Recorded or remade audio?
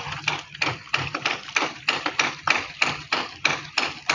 recorded